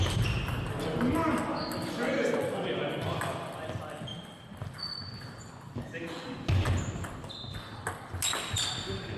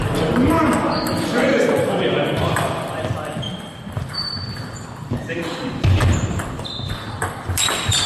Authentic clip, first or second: first